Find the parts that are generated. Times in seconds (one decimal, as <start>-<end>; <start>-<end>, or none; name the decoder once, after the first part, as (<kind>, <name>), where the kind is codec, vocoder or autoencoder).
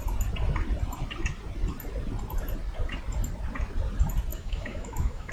4.3-5.3 (autoencoder, DAC-VAE)